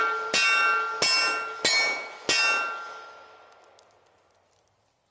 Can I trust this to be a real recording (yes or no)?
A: yes